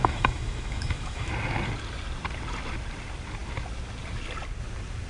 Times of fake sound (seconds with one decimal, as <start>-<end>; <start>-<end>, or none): 0.0-1.3